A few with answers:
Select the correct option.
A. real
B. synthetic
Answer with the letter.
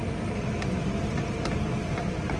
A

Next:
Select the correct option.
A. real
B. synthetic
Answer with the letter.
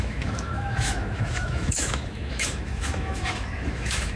B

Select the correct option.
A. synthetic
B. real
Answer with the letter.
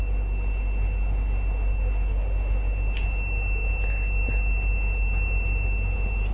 B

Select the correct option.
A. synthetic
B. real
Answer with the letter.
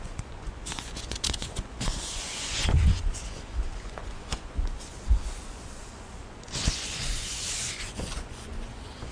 A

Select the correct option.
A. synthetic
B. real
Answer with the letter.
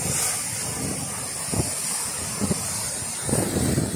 B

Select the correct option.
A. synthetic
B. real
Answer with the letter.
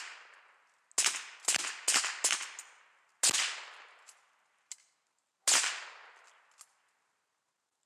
B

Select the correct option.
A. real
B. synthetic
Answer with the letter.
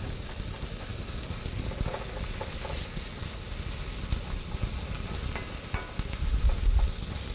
A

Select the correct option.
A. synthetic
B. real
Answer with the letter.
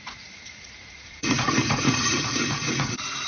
A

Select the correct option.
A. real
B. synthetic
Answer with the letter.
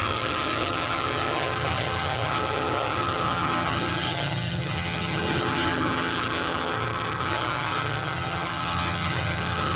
B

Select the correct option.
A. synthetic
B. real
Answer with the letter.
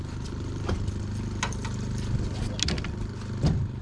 B